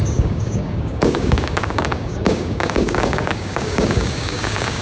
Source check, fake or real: fake